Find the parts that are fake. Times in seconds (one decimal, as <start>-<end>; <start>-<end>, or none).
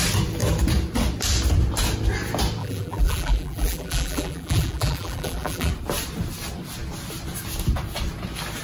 2.6-5.7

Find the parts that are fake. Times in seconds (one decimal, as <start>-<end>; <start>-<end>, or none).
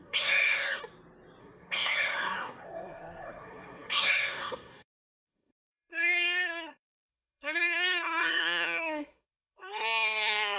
0.0-0.8; 1.4-10.6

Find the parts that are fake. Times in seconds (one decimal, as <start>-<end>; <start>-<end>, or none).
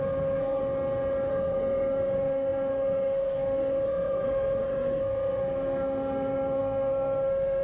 0.0-0.6; 1.3-7.6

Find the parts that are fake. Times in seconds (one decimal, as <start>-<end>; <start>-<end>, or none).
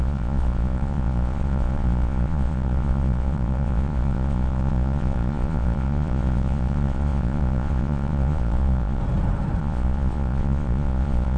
0.0-9.0; 9.6-11.4